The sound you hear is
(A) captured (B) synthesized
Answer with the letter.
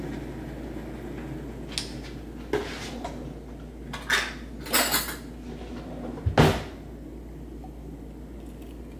A